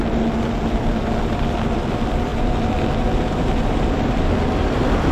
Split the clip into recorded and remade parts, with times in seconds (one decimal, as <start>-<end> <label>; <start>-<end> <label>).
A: 0.0-5.1 recorded